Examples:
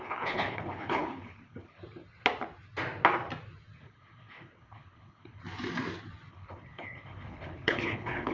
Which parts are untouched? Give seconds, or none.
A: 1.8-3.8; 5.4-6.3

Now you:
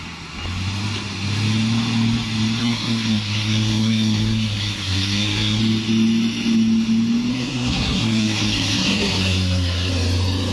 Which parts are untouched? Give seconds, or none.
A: 0.0-2.6; 5.6-7.3; 9.9-10.5

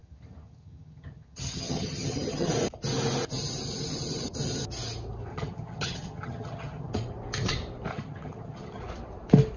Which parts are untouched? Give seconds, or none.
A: 2.5-5.3; 6.9-7.9; 8.8-9.6

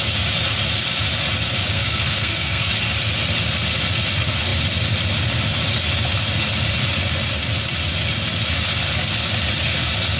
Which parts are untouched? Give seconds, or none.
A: 0.0-1.7; 2.7-10.2

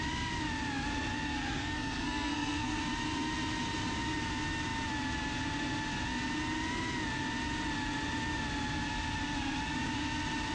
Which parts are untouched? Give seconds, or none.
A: 0.0-1.3; 2.8-10.5

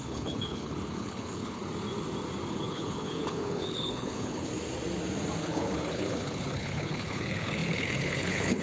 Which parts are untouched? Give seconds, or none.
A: 1.6-2.5; 4.5-5.4

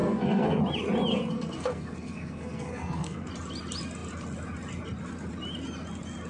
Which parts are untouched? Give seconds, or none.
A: 0.6-1.1; 3.3-6.3

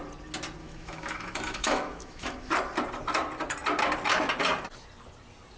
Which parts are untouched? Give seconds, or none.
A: 0.0-0.6; 2.5-5.6